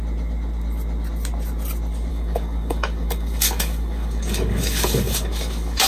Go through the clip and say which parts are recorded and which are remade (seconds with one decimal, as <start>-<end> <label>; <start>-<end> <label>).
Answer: 0.0-2.1 recorded; 2.1-5.9 remade